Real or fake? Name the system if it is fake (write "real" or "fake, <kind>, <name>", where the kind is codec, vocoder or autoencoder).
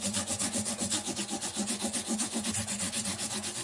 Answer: fake, vocoder, Vocos